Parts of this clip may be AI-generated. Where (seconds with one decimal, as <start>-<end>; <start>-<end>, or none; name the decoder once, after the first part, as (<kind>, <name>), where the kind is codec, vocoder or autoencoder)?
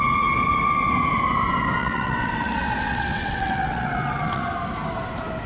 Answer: 1.8-4.4 (vocoder, WaveNeXt)